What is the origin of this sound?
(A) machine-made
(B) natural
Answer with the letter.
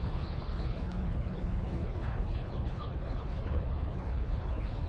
A